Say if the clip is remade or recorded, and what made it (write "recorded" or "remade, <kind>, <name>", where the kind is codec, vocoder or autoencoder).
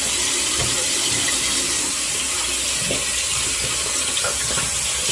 recorded